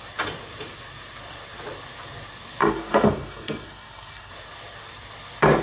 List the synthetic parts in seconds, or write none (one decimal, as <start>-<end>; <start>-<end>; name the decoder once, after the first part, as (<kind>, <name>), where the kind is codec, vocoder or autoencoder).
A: 2.6-4.3 (codec, SNAC)